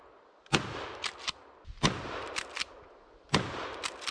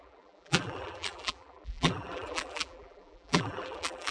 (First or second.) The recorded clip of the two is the first